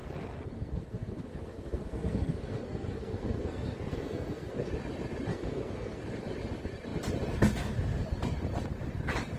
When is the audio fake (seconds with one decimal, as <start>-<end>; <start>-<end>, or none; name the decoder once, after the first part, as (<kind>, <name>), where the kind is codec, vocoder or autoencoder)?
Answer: 0.0-4.7 (codec, SNAC); 5.3-6.0